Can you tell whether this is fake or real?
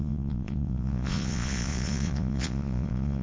fake